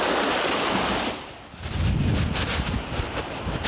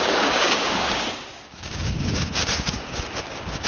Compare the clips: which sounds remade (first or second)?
second